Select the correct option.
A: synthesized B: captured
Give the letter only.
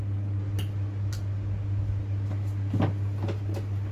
B